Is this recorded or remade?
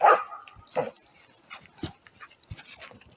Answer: recorded